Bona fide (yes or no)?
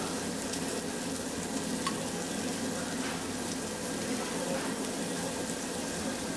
yes